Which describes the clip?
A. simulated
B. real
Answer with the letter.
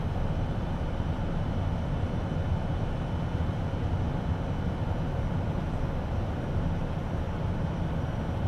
B